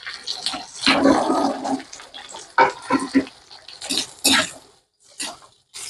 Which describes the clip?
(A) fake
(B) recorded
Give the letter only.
B